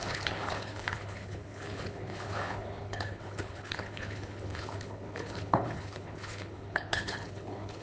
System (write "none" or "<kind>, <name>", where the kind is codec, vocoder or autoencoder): codec, HILCodec